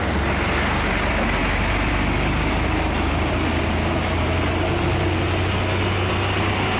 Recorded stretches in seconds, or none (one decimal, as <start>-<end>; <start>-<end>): 0.0-6.8